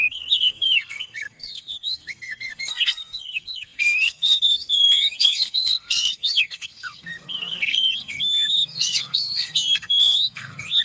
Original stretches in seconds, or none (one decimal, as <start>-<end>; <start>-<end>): none